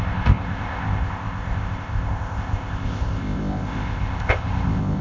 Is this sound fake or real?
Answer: fake